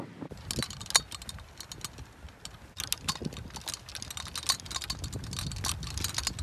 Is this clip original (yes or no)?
yes